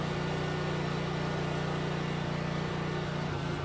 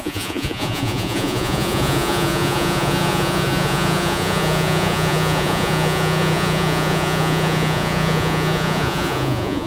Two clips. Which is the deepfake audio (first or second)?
second